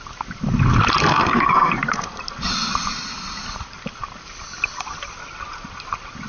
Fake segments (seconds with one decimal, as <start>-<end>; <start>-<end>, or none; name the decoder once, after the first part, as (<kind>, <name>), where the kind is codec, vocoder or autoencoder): 1.0-1.7 (codec, SNAC)